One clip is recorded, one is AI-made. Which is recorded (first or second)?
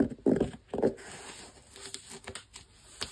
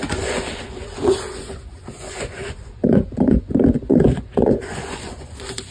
first